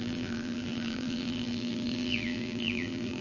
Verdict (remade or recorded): remade